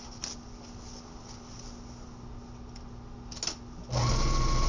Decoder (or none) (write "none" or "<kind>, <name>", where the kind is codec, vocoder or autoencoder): none